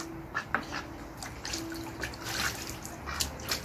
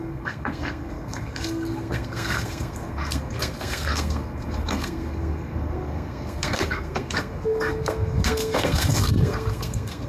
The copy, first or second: second